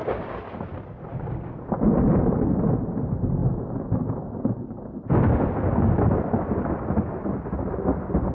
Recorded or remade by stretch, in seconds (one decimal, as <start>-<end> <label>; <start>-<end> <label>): 0.0-8.3 recorded